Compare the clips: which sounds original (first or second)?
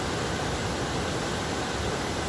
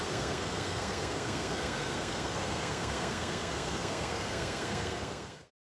first